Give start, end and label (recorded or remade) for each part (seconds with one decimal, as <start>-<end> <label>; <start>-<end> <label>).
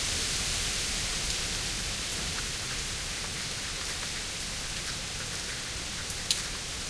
0.0-6.9 recorded